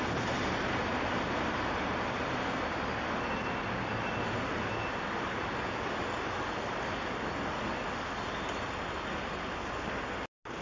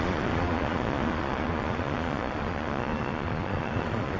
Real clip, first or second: first